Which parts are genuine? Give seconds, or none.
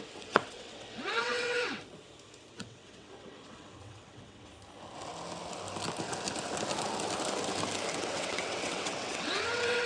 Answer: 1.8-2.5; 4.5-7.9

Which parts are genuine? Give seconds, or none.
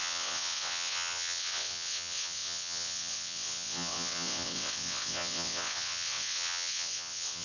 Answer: none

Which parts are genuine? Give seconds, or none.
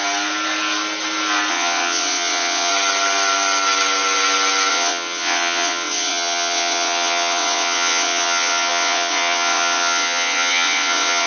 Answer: 0.0-1.5; 2.7-4.7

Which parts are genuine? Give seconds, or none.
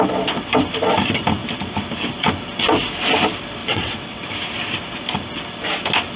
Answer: 0.0-3.6; 4.2-6.2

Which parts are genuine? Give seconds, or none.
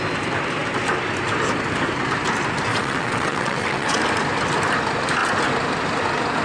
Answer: 0.0-2.7; 4.0-6.4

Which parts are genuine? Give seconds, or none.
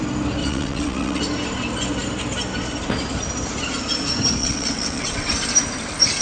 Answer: 0.0-0.4; 1.2-4.4; 5.3-6.2